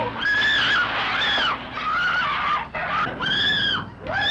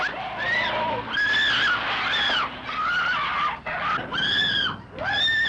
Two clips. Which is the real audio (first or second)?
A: first